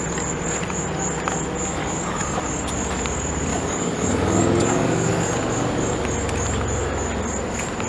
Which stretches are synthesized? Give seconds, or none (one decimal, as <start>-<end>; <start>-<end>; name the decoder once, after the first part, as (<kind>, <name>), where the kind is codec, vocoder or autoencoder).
1.8-2.4 (codec, DAC); 3.5-5.1